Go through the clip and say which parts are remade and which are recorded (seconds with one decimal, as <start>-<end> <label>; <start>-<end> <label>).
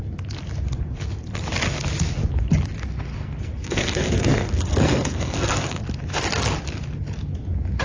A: 0.0-3.1 recorded; 3.1-5.8 remade; 5.8-7.8 recorded